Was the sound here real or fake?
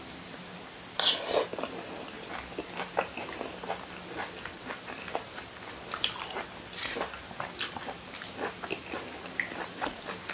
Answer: real